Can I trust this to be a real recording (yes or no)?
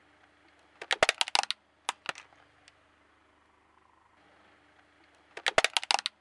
yes